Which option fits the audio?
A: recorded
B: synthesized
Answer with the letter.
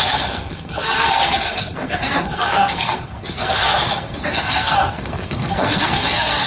B